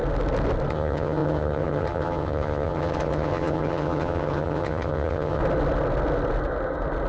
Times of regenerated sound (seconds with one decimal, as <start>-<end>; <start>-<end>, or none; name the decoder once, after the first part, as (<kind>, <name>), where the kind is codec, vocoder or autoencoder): 0.7-5.4 (vocoder, HiFi-GAN)